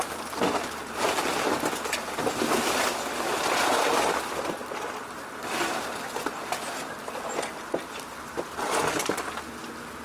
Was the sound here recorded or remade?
recorded